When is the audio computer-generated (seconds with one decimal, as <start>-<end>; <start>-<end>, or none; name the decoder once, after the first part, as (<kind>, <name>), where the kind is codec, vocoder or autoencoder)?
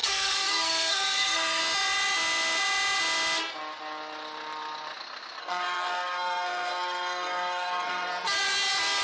0.0-1.6 (codec, SNAC); 5.4-8.1